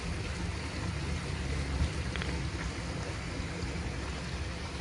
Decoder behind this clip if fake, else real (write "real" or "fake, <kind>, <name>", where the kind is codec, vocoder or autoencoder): real